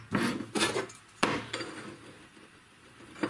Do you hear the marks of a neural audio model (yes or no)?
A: no